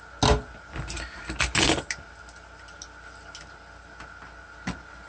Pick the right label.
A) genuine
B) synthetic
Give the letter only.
A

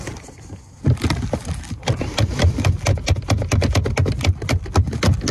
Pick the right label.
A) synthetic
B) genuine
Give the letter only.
B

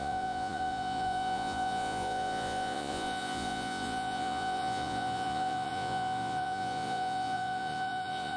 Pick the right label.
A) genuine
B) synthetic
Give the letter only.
B